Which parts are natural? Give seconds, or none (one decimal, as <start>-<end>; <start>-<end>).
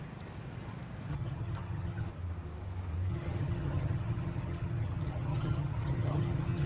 0.0-1.1; 2.1-3.1